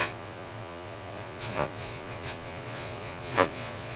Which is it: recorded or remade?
remade